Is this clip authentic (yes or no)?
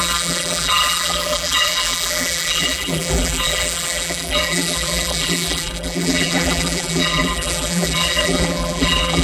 no